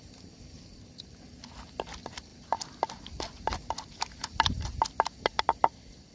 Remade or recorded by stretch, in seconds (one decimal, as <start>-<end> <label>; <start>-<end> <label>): 0.0-6.1 recorded